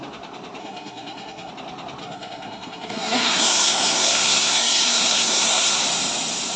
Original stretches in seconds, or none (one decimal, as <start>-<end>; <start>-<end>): 0.0-0.6; 1.5-2.0; 5.8-6.6